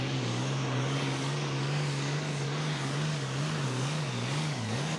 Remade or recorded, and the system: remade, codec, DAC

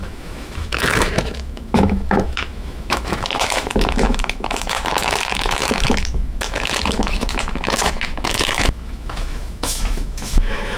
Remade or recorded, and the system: remade, autoencoder, DAC-VAE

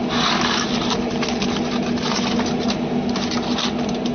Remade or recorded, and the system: recorded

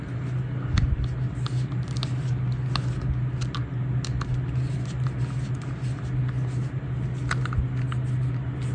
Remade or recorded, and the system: recorded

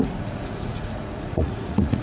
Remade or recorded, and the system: remade, vocoder, Vocos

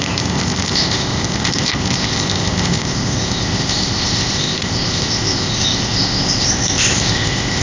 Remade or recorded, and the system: remade, codec, ZipCodec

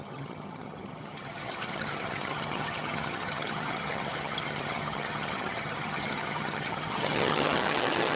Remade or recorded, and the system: remade, vocoder, HiFi-GAN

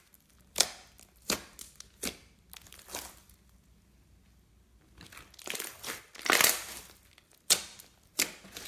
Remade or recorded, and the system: recorded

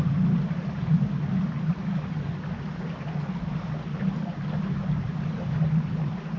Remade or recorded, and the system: recorded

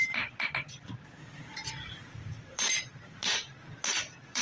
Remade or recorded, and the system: remade, vocoder, BigVGAN v2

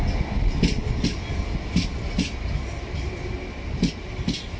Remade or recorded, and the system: recorded